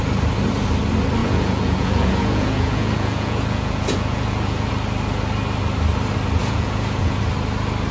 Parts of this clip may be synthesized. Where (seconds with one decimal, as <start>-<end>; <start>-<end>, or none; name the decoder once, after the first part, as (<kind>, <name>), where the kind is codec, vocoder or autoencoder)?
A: 1.2-4.7 (vocoder, Vocos); 6.4-7.2